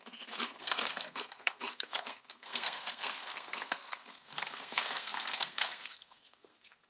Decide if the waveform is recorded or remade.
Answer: remade